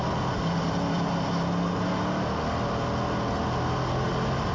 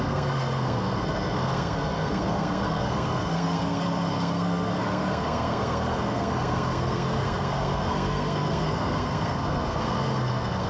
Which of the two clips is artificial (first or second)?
second